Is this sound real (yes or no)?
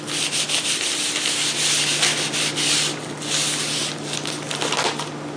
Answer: yes